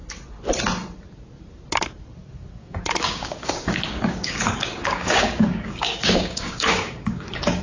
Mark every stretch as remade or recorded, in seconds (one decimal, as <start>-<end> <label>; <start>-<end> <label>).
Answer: 0.0-2.6 recorded; 2.6-7.6 remade